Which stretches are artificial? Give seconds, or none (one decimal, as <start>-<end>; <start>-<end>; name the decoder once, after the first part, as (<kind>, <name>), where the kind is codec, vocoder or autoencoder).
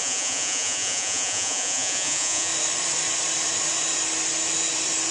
0.0-2.5 (vocoder, Vocos)